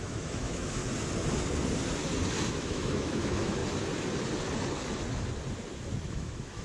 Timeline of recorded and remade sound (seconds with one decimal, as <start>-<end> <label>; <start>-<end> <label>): 0.0-0.8 remade; 0.8-2.5 recorded; 2.5-3.6 remade; 3.6-6.1 recorded; 6.1-6.6 remade